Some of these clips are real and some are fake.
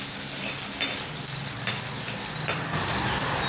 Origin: real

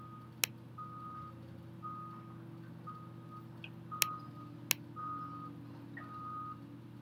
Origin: real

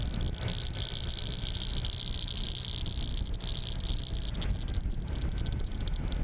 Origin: real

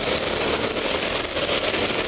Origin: real